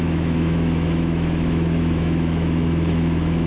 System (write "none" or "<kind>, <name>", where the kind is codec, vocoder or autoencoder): autoencoder, DAC-VAE